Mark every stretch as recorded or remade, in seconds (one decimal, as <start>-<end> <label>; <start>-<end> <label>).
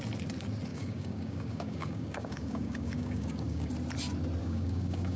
0.0-0.7 recorded; 0.7-3.7 remade; 3.7-4.4 recorded; 4.4-5.2 remade